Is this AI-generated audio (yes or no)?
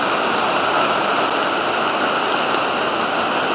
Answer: no